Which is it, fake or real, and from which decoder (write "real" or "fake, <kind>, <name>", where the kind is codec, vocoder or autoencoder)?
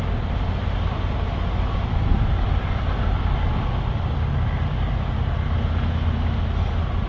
real